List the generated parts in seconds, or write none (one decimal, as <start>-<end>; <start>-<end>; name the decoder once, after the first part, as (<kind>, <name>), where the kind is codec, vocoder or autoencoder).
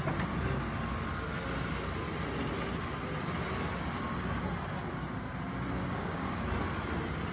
5.8-6.4 (codec, DAC)